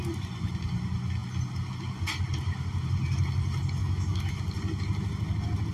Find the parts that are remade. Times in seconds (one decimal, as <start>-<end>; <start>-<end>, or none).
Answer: 3.8-4.4